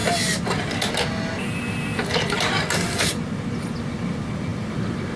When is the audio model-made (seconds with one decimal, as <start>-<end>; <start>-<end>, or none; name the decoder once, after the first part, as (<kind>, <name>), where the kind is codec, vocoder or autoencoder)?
none